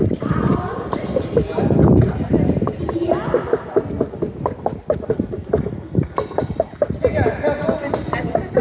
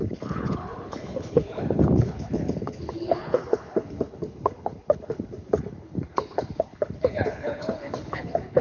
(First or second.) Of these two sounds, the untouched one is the first